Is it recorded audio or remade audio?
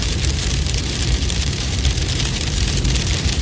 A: remade